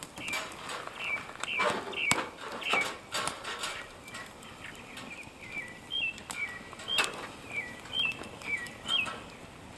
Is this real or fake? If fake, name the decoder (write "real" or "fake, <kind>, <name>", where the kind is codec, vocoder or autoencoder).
real